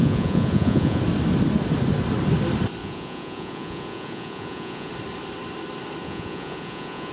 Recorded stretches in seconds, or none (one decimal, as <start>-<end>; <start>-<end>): 1.0-2.8; 4.9-6.0